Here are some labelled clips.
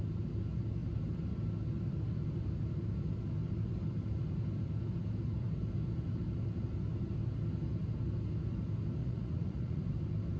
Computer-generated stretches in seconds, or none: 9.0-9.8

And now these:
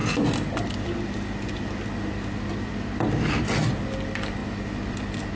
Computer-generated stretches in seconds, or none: none

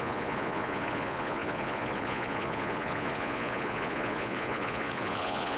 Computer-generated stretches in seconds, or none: 0.0-5.6

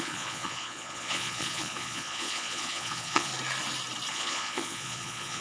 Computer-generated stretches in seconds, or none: 0.0-3.3; 4.1-5.4

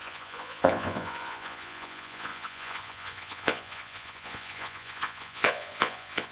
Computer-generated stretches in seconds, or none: 0.0-6.3

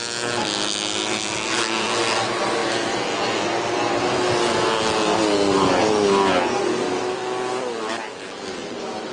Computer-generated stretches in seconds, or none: none

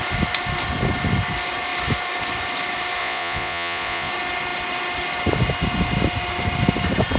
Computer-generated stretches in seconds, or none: 3.0-4.1

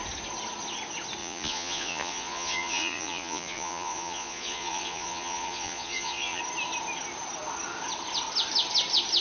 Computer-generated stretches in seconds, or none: 1.2-6.4